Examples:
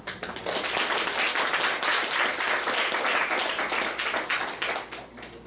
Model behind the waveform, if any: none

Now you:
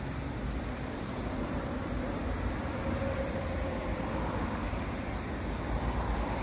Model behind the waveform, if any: vocoder, BigVGAN v2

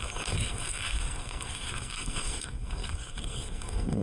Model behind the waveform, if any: codec, SNAC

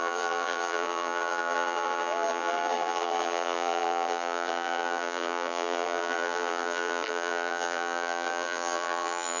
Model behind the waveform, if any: vocoder, BigVGAN v2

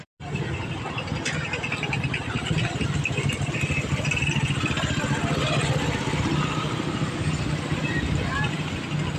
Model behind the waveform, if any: none